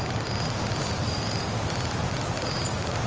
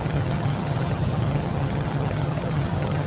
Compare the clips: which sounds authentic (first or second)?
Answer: first